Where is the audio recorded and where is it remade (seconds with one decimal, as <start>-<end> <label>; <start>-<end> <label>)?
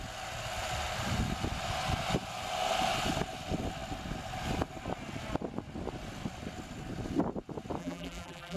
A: 0.0-7.8 recorded; 7.8-8.6 remade